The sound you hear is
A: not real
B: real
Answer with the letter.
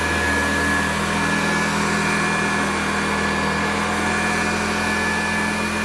B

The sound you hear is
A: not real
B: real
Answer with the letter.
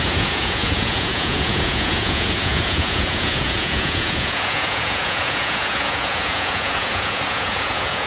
A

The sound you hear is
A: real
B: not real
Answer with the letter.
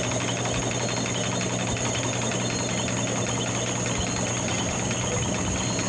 A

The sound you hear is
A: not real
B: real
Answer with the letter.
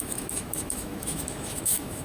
A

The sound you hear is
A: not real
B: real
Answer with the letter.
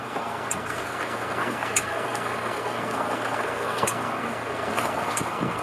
A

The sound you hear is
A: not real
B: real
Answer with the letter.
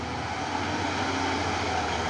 B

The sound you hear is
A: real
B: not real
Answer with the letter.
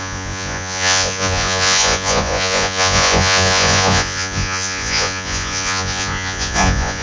B